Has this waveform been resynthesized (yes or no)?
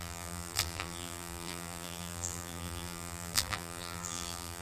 yes